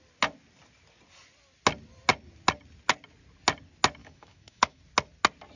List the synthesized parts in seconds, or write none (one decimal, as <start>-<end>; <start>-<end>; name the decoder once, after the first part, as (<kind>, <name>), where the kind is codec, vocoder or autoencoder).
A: 4.0-4.8 (autoencoder, DAC-VAE)